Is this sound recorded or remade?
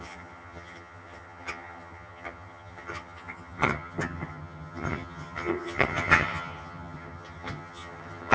remade